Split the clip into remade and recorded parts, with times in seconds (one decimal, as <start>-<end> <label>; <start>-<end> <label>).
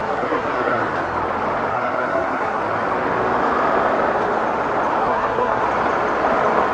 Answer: 0.0-0.8 remade; 0.8-1.7 recorded; 1.7-2.6 remade; 2.6-5.0 recorded; 5.0-5.6 remade; 5.6-6.7 recorded